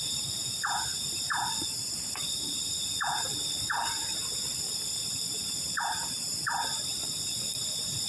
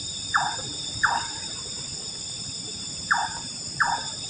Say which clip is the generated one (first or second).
second